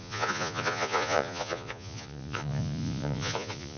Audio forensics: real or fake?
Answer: fake